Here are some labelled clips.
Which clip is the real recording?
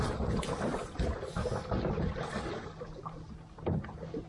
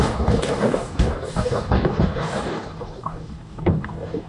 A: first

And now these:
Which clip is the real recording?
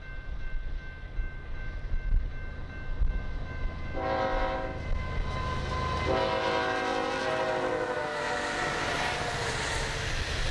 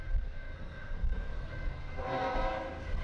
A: first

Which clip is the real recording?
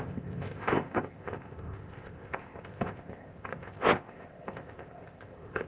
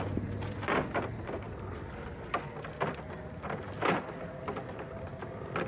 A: second